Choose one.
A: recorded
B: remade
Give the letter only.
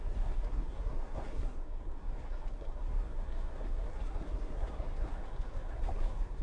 B